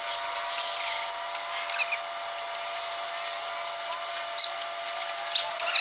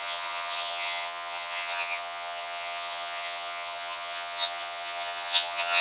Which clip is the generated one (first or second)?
second